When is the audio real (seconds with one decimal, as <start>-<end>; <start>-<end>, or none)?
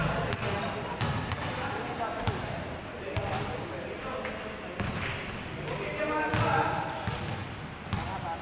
0.0-8.4